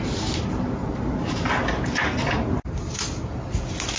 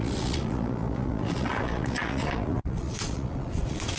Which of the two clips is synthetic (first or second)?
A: second